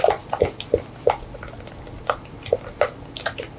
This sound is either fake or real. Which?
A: real